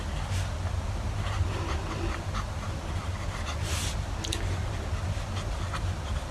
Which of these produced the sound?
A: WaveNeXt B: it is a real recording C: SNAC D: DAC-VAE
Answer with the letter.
B